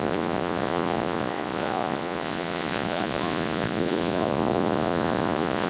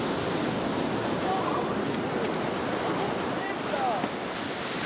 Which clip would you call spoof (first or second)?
first